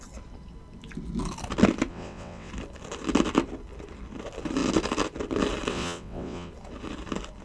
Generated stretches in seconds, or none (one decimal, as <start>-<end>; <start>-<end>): 1.9-2.5; 5.7-6.5